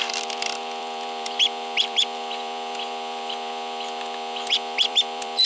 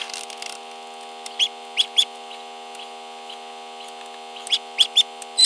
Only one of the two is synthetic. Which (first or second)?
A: first